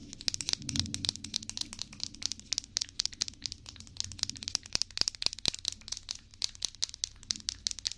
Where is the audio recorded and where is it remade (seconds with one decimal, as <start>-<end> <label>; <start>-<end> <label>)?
0.0-8.0 recorded